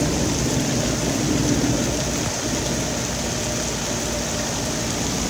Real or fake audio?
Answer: real